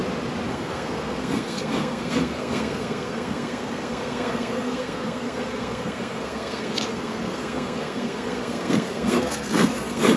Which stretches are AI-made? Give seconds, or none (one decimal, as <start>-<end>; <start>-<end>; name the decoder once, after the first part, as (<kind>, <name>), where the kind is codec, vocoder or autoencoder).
0.5-10.2 (codec, SNAC)